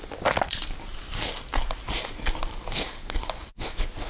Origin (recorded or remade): recorded